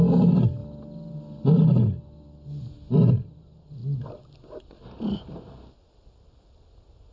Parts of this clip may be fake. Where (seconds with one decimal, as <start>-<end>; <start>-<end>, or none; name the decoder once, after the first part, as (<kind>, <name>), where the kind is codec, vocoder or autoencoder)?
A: none